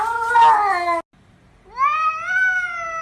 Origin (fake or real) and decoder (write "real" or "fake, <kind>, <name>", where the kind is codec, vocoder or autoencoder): real